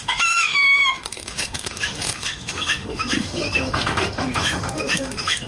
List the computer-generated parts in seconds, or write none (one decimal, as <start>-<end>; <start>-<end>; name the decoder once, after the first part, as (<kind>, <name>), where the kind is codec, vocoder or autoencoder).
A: 0.0-5.5 (autoencoder, DAC-VAE)